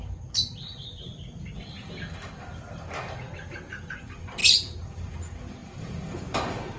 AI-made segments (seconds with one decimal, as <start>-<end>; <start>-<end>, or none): 4.4-5.1; 5.6-6.3